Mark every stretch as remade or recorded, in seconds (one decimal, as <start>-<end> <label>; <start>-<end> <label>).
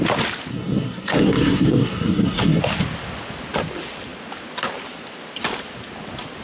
0.0-0.5 recorded; 0.5-2.6 remade; 2.6-6.4 recorded